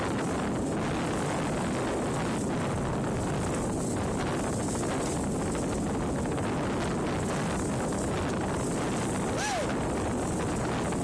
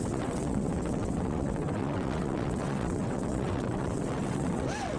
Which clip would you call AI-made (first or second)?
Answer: second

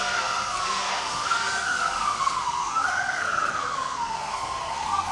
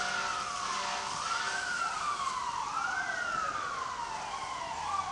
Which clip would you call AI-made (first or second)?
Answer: first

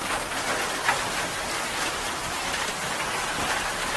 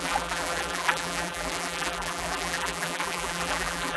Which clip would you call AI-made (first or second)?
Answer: second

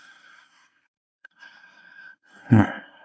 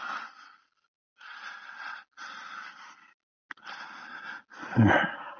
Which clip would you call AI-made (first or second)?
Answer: first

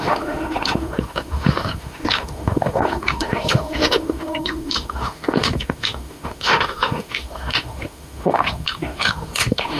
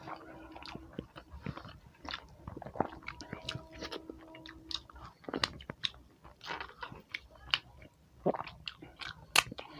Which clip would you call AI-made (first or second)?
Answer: first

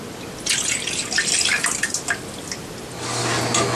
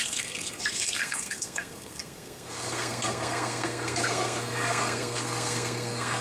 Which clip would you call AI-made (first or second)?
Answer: second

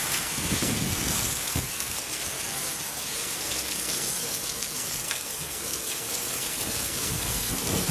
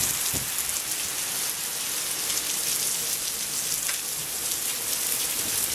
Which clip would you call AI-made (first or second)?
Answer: first